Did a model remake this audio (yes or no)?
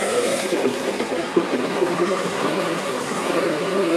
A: yes